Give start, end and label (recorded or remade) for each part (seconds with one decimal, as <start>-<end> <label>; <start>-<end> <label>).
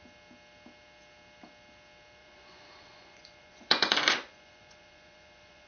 0.0-2.2 recorded; 2.2-5.7 remade